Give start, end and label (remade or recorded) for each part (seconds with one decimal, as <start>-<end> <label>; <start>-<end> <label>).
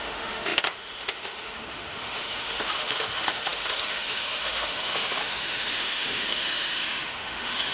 0.0-7.7 remade